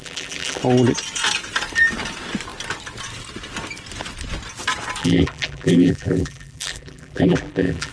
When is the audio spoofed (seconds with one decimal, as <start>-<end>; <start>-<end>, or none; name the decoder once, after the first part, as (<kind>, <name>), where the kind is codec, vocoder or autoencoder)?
0.0-0.6 (vocoder, BigVGAN v2); 5.0-7.9